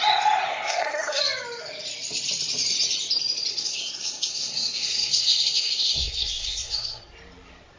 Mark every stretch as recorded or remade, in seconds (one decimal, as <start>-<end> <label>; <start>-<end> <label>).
0.0-0.5 recorded; 0.5-1.2 remade; 1.2-3.5 recorded; 3.5-7.0 remade; 7.0-7.8 recorded